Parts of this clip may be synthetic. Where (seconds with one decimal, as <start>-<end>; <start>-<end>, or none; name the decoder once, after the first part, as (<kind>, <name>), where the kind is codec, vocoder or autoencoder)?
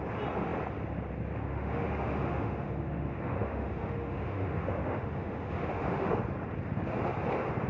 1.5-6.1 (autoencoder, DAC-VAE)